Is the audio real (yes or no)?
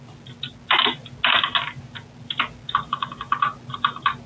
yes